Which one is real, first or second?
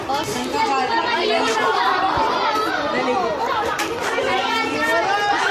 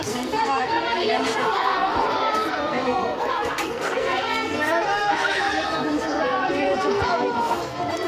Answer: first